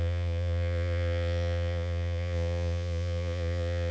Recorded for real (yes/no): no